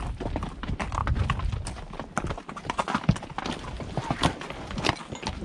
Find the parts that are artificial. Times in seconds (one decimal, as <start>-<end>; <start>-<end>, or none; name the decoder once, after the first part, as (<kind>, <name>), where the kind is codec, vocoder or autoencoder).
none